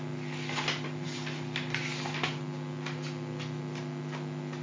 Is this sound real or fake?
real